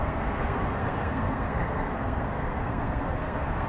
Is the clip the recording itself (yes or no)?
no